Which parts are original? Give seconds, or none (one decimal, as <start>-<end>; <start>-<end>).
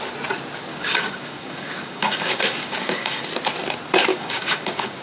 0.0-0.7; 3.2-4.1